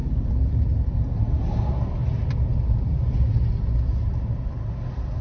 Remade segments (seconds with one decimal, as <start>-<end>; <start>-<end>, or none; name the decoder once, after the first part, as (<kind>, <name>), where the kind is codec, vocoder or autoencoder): none